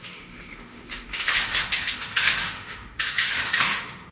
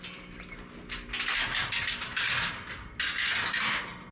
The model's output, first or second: first